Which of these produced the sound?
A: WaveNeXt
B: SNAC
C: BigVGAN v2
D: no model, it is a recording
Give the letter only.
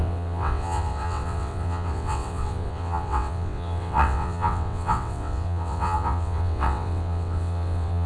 A